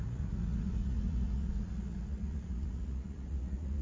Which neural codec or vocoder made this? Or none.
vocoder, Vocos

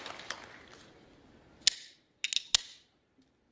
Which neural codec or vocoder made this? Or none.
none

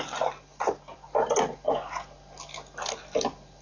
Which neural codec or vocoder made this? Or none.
none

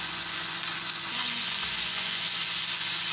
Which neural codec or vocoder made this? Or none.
vocoder, Vocos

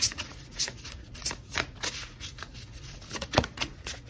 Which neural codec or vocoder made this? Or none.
vocoder, Vocos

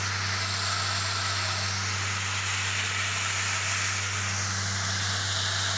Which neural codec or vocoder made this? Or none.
none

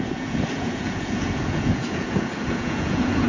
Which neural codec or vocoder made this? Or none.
vocoder, Vocos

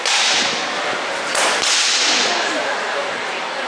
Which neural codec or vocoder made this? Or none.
none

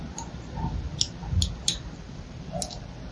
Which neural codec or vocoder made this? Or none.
none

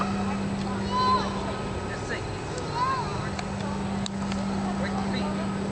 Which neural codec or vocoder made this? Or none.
none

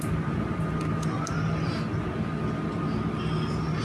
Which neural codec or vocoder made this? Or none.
none